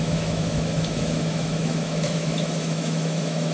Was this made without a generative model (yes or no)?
no